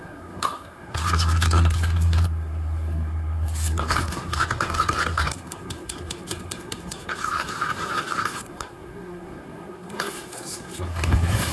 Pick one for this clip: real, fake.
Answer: fake